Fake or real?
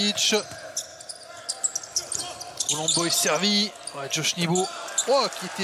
real